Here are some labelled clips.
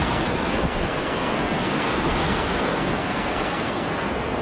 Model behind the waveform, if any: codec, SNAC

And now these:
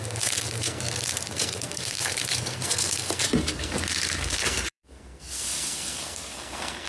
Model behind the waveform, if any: codec, SNAC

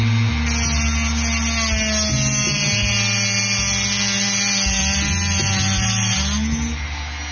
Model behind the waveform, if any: none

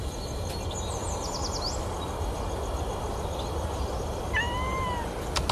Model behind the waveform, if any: none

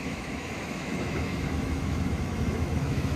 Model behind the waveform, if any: autoencoder, DAC-VAE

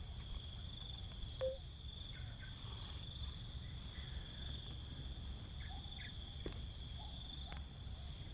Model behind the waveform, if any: vocoder, BigVGAN v2